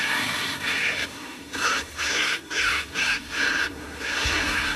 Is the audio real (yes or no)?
no